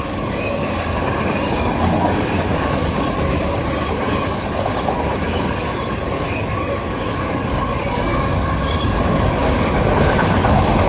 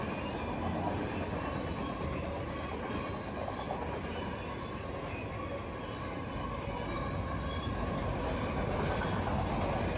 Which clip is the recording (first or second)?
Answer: second